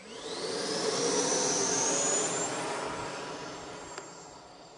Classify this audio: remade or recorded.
recorded